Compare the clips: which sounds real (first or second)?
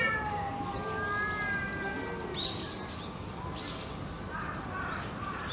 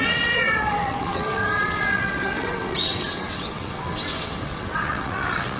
first